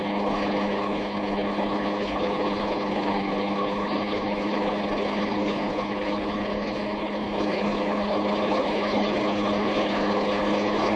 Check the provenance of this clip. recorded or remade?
remade